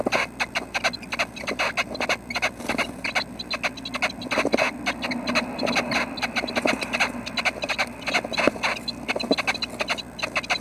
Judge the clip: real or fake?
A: real